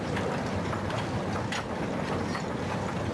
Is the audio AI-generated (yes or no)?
no